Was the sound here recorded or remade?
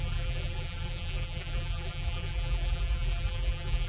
remade